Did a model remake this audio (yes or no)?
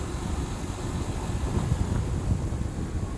no